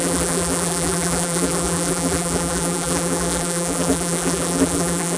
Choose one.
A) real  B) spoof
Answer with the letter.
B